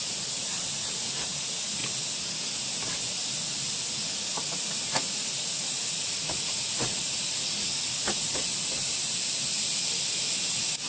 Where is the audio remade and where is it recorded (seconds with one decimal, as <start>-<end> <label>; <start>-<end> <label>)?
0.0-1.8 remade; 1.8-3.9 recorded; 3.9-8.5 remade; 8.5-10.5 recorded; 10.5-10.9 remade